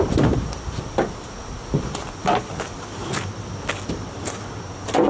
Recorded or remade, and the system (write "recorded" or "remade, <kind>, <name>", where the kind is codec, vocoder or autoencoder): recorded